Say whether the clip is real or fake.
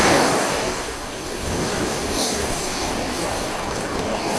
fake